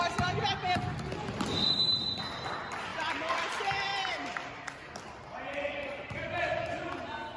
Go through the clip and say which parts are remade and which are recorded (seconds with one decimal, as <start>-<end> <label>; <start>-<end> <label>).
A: 0.0-2.9 recorded; 2.9-3.5 remade; 3.5-3.9 recorded; 3.9-7.0 remade; 7.0-7.4 recorded